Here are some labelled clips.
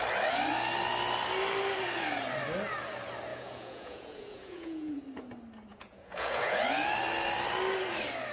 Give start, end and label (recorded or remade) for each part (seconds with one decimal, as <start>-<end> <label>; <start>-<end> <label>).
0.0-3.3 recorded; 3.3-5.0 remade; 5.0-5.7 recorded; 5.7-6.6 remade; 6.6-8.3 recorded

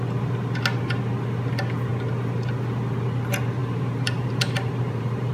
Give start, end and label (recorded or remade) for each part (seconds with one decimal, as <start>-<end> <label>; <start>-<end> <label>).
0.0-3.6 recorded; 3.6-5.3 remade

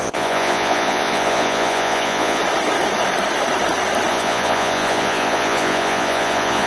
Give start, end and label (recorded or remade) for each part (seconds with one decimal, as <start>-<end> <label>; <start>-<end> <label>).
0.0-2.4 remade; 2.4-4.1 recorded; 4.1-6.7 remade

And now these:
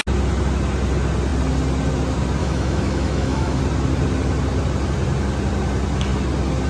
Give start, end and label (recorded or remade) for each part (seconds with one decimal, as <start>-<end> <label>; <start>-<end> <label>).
0.0-2.4 recorded; 2.4-3.6 remade; 3.6-6.7 recorded